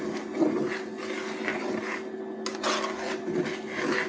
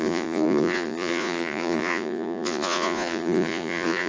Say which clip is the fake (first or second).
second